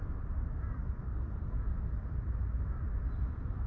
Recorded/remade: recorded